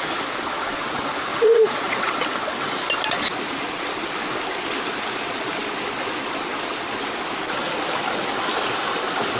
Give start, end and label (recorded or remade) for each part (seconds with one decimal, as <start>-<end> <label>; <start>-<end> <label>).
0.0-1.3 recorded; 1.3-2.1 remade; 2.1-9.4 recorded